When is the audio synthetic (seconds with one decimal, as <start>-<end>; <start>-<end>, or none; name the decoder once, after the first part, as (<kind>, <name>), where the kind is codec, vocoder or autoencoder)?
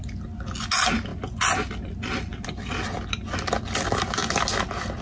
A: none